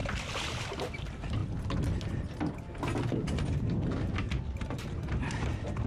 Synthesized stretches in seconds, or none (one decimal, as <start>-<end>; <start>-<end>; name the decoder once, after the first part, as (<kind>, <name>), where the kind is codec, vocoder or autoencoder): 0.6-1.4 (vocoder, BigVGAN v2); 4.6-5.9